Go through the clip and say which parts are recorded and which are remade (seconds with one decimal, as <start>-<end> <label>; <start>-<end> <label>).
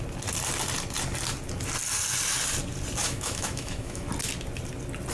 0.0-3.0 recorded; 3.0-4.0 remade; 4.0-5.1 recorded